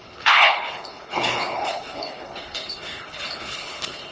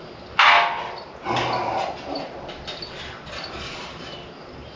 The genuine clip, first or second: second